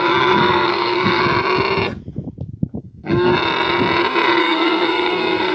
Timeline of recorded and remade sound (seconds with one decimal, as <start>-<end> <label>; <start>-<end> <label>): 0.0-1.2 remade; 1.2-2.8 recorded; 2.8-3.3 remade; 3.3-4.4 recorded; 4.4-5.5 remade